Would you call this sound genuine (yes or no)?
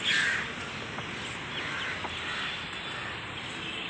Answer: yes